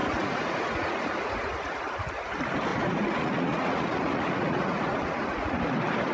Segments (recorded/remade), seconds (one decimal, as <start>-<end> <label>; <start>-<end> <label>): 0.0-1.8 remade; 1.8-2.7 recorded; 2.7-5.6 remade; 5.6-6.1 recorded